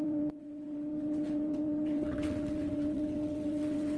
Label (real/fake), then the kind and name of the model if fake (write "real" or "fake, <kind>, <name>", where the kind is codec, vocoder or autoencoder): fake, vocoder, WaveNeXt